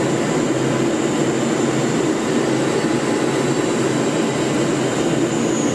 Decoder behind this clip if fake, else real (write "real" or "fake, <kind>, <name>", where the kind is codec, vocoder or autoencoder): real